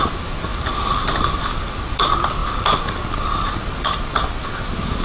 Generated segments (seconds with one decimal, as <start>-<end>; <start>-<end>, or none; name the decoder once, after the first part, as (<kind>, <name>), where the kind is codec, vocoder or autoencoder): none